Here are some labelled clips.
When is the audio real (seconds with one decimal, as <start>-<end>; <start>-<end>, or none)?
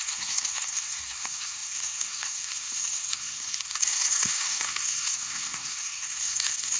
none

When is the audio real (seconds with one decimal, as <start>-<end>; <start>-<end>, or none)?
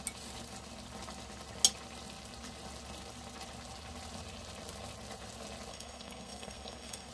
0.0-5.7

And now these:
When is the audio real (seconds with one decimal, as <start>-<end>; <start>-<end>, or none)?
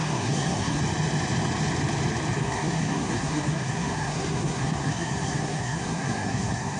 0.8-2.4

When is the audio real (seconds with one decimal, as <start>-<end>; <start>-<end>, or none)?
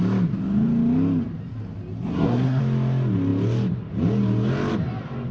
0.0-2.1; 2.6-5.3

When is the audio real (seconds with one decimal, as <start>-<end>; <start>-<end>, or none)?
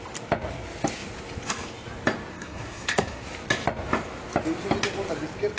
0.0-2.3; 3.2-5.6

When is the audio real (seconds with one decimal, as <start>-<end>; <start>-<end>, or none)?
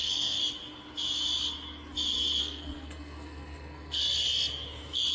0.4-2.4; 4.0-5.1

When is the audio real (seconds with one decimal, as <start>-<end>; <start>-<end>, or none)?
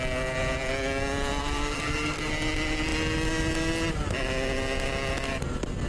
0.0-1.4; 2.3-5.9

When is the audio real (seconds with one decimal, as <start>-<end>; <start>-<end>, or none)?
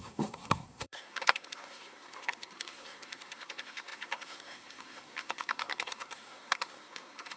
none